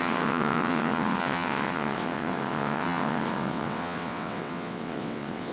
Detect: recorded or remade remade